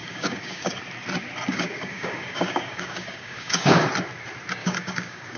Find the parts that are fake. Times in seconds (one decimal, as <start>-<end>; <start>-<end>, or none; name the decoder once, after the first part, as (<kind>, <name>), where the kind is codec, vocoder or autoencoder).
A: 0.0-0.7 (codec, DAC); 1.5-3.9; 4.6-5.4

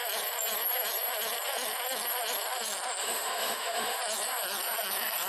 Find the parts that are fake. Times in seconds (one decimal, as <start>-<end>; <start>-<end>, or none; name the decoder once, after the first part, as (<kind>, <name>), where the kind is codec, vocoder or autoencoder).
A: 3.0-4.0 (autoencoder, DAC-VAE)

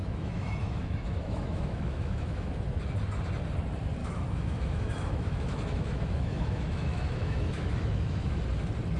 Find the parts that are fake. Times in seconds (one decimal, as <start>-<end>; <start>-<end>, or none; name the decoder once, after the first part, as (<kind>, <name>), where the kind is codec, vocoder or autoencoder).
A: 0.0-2.5 (autoencoder, DAC-VAE); 4.0-8.4

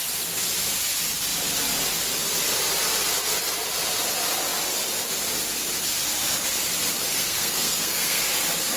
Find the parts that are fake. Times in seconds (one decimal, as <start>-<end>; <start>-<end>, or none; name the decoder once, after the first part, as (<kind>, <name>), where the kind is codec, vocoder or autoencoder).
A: 7.1-8.2 (codec, SNAC)

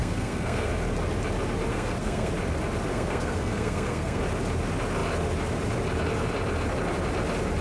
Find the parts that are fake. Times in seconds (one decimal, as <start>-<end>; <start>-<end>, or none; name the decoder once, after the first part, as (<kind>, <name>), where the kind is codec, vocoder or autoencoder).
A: 0.0-0.7 (codec, SNAC); 1.7-2.3; 2.9-4.2